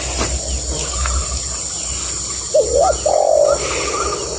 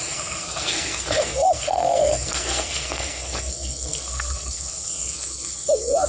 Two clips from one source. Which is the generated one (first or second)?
second